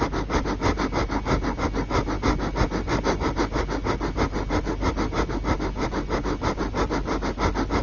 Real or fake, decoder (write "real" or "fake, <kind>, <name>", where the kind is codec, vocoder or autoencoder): real